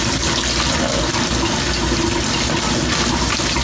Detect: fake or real real